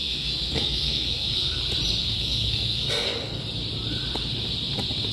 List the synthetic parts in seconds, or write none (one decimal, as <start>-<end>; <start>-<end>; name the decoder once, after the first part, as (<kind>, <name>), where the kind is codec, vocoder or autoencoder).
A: 0.0-1.6 (codec, SNAC); 2.0-3.4